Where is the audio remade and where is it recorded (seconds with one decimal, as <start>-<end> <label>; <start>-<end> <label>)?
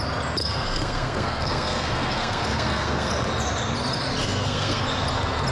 0.0-0.4 recorded; 0.4-3.1 remade; 3.1-4.2 recorded; 4.2-4.8 remade; 4.8-5.5 recorded